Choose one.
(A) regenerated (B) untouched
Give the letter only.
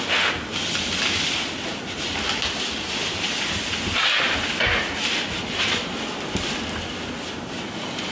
B